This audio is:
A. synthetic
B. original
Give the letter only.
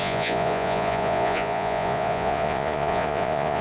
A